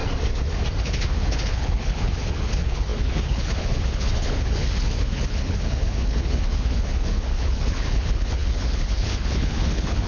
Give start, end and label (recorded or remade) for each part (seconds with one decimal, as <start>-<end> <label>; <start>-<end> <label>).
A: 0.0-0.8 recorded; 0.8-10.1 remade